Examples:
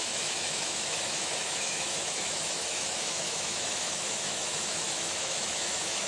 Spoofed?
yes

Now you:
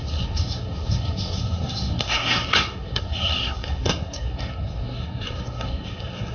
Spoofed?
yes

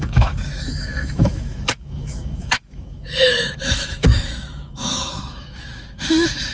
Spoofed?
yes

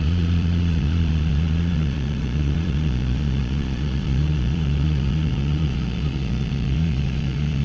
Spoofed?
yes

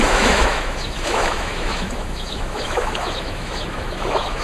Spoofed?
yes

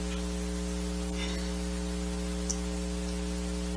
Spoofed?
no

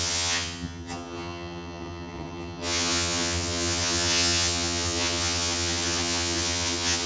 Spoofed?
yes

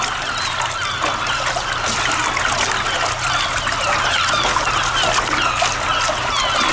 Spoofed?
no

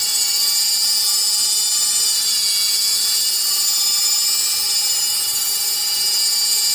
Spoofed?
no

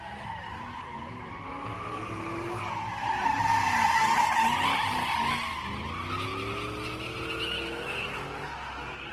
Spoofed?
no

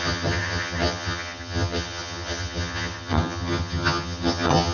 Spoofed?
yes